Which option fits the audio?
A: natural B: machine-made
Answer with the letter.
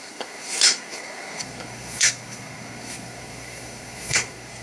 B